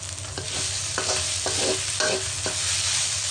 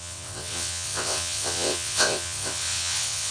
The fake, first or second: second